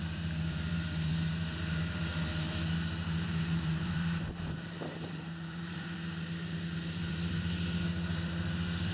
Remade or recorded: remade